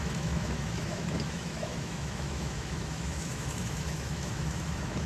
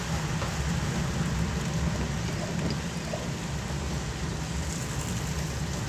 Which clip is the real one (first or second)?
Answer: second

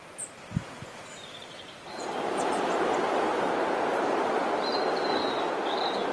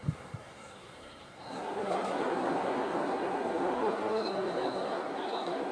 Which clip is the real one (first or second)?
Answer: first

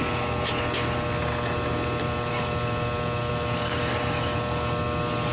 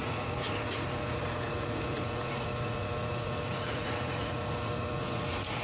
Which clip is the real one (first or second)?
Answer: first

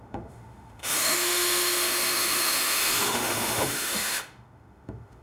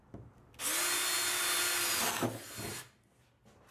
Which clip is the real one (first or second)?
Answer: second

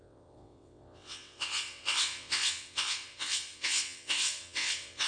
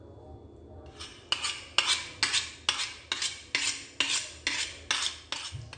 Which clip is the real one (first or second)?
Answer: second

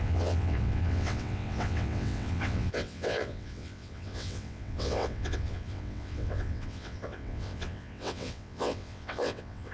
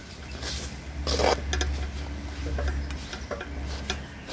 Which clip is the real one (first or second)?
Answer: second